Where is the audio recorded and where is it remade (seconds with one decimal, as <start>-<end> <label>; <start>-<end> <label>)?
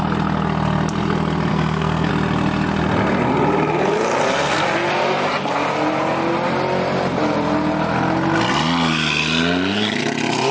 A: 0.0-1.5 recorded; 1.5-2.1 remade; 2.1-10.5 recorded